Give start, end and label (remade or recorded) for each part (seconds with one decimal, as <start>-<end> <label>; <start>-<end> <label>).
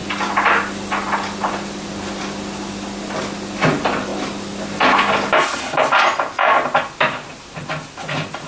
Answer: 0.0-8.5 recorded